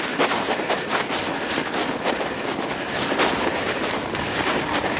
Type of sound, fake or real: real